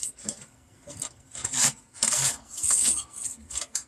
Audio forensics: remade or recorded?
remade